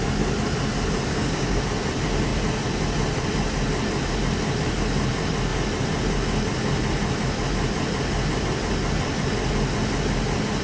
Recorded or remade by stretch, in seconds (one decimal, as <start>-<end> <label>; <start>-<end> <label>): 0.0-1.1 recorded; 1.1-1.6 remade; 1.6-10.6 recorded